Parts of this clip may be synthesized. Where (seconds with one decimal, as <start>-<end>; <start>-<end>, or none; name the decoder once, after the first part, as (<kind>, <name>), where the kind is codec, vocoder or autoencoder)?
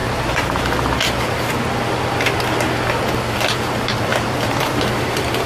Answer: 0.0-0.6 (vocoder, BigVGAN v2); 4.1-4.8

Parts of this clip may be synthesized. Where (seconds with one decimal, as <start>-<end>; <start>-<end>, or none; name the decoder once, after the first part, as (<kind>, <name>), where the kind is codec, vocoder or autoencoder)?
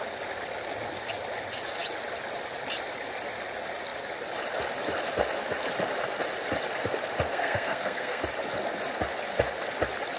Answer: 7.3-8.2 (codec, SNAC)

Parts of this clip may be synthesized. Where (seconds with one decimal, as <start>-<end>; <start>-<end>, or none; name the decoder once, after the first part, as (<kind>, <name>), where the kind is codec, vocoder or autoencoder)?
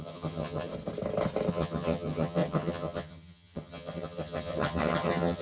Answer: 0.0-0.7 (vocoder, HiFi-GAN); 1.5-5.4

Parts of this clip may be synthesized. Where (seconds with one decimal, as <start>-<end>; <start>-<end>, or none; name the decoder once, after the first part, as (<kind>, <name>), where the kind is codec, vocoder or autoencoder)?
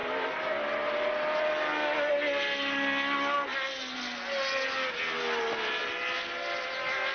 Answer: none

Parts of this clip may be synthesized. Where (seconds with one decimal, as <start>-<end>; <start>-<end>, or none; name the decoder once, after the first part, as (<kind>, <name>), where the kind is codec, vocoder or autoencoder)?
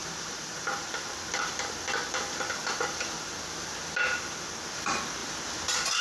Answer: 0.0-1.3 (vocoder, BigVGAN v2)